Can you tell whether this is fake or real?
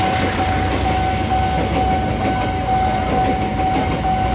real